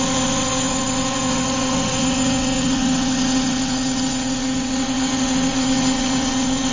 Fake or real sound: fake